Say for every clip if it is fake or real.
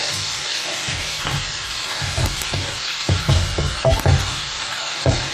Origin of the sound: fake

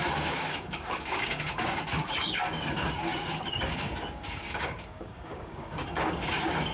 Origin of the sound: fake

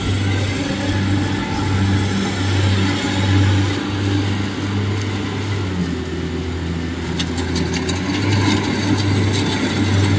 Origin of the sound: real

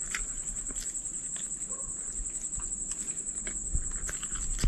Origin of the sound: real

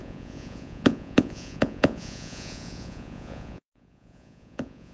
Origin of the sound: fake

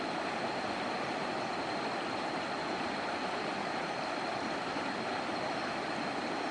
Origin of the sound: real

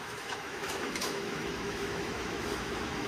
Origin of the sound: fake